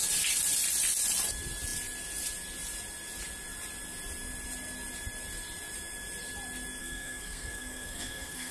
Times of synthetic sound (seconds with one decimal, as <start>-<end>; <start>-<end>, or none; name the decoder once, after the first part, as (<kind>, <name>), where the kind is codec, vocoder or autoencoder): 6.8-8.5 (codec, SNAC)